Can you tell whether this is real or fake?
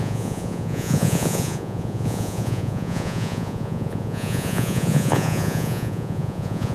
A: fake